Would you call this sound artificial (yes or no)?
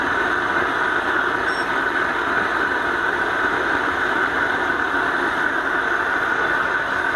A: yes